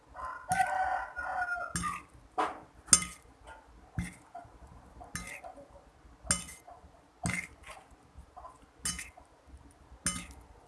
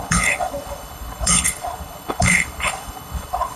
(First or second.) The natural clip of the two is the first